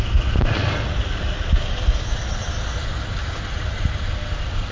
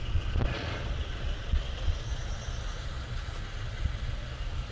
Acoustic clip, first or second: first